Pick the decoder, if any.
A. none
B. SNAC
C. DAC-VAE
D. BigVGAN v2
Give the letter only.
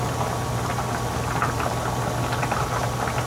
A